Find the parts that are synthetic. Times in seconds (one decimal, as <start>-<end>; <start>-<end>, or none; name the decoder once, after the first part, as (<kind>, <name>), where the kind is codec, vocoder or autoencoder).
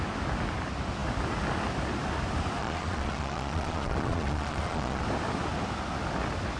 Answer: 2.6-5.0 (vocoder, Vocos)